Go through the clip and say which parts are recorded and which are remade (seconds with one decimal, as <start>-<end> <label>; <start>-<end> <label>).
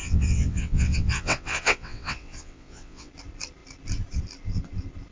0.0-3.1 remade; 3.1-5.1 recorded